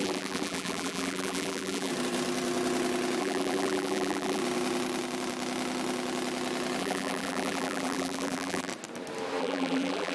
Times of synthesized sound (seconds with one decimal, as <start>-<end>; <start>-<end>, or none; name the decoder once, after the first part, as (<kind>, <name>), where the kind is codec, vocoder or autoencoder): 0.0-1.9 (vocoder, BigVGAN v2); 3.2-4.4; 6.8-8.7; 9.4-10.1